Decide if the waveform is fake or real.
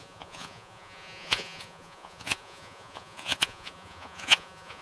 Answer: fake